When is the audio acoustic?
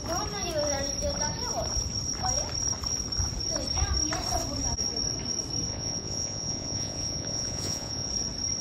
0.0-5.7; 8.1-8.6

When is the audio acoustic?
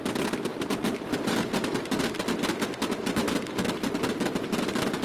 0.0-5.0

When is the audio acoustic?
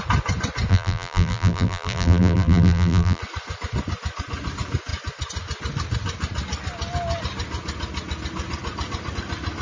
0.0-0.7; 3.2-9.6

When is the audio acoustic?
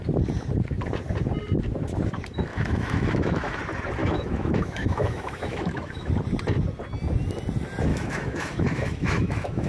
0.0-2.5; 3.6-4.0; 6.1-7.9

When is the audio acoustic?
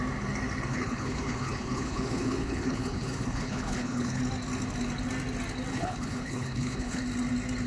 0.0-0.7; 4.2-5.7; 7.0-7.7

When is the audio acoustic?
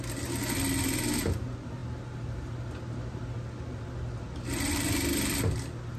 0.0-6.0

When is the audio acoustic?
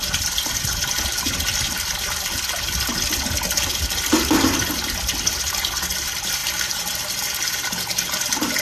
0.0-6.4; 7.0-8.6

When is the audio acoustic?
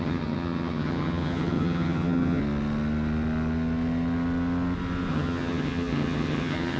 2.4-5.1